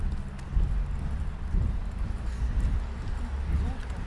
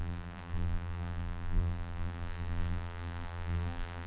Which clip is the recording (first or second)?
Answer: first